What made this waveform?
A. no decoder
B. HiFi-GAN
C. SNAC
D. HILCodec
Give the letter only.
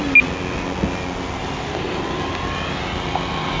A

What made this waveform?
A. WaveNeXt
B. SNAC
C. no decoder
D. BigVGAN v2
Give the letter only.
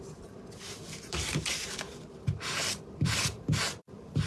D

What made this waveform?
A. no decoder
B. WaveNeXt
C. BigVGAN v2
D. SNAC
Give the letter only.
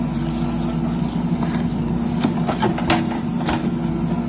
A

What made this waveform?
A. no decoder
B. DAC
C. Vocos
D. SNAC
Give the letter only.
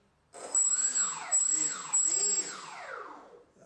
A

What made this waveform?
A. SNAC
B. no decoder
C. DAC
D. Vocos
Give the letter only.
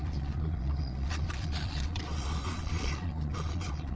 D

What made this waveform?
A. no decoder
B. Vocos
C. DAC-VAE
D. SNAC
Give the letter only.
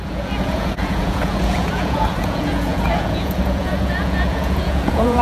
B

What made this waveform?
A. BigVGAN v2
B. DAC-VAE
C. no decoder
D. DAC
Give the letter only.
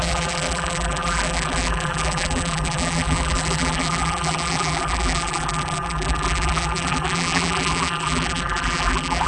A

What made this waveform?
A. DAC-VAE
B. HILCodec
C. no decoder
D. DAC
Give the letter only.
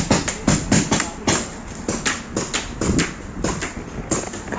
C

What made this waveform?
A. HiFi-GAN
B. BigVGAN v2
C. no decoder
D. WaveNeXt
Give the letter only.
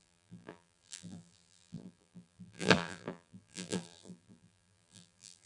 B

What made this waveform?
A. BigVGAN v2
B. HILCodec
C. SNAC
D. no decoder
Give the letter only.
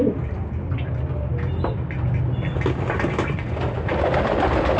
D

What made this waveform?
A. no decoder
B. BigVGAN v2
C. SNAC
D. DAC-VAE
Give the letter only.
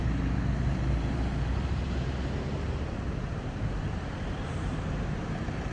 B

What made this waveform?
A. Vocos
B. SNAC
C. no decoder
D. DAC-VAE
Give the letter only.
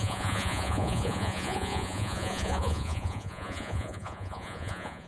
A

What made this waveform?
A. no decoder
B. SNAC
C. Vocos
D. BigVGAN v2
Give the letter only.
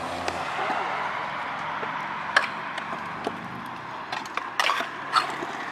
A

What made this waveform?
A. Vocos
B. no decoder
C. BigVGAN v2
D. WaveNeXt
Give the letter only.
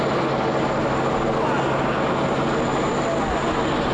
B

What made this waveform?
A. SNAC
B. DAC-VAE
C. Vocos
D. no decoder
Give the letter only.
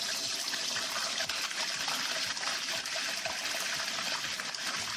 D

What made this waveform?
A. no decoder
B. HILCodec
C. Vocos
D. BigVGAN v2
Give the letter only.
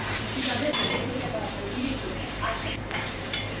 D